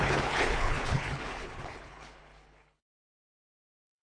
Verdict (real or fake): fake